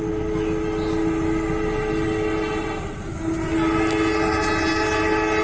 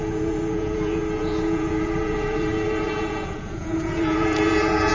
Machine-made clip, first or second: second